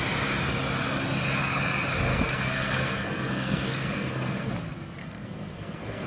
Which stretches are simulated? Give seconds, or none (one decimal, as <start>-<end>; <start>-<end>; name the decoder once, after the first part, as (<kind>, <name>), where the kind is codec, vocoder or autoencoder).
2.1-4.5 (codec, SNAC); 5.0-6.1